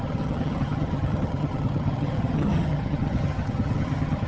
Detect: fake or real fake